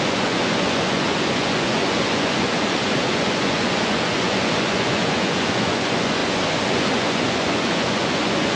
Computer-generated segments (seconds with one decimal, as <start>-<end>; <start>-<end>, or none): 0.0-8.6